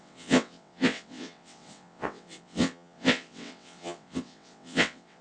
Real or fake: fake